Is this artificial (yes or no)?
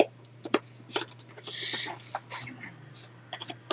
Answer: no